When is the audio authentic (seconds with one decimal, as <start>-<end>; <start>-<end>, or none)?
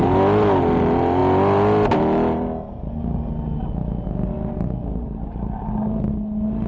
0.0-6.7